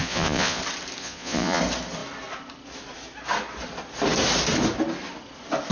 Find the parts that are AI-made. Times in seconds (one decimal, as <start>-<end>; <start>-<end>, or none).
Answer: 0.0-0.6; 1.0-1.6